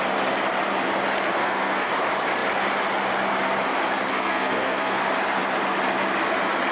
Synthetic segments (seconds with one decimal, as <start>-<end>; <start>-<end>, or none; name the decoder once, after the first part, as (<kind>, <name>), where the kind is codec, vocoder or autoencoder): 1.4-1.9 (codec, SNAC); 4.1-5.0

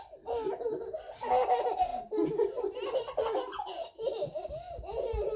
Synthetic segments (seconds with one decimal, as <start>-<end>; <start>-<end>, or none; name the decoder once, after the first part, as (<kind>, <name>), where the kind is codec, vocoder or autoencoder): none

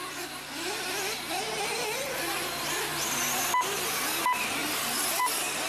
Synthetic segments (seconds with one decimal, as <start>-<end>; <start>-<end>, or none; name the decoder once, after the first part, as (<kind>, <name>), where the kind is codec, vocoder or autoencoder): none

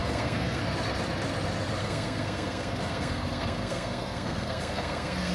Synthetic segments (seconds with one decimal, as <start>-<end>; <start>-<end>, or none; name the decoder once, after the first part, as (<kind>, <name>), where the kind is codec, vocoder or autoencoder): 0.0-0.6 (codec, SNAC); 1.8-5.3